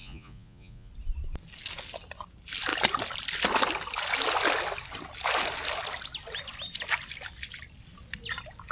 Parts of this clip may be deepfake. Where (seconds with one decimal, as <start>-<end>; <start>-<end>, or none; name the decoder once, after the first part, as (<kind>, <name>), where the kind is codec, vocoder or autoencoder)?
0.0-0.9 (vocoder, Vocos)